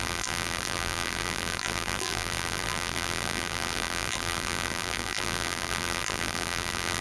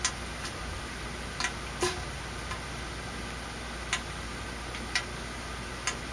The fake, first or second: first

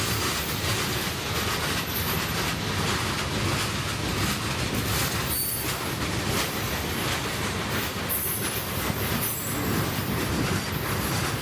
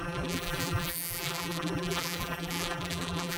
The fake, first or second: second